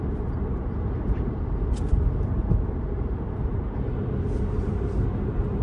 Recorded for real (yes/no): yes